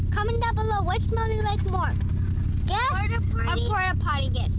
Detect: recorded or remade recorded